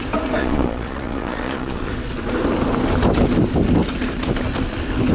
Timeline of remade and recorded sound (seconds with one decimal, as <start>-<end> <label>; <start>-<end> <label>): 0.0-0.4 recorded; 0.4-1.9 remade; 1.9-5.1 recorded